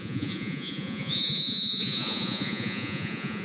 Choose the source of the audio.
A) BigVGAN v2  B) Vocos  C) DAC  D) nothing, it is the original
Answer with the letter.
B